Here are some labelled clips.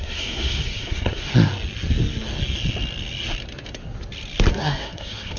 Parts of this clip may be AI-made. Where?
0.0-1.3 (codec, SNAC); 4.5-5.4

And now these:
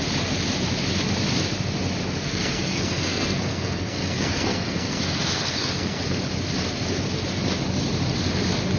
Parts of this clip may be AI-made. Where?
2.2-6.0 (codec, SNAC)

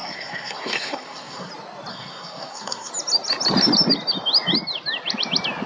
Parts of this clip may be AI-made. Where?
0.0-1.5 (codec, SNAC); 1.9-2.9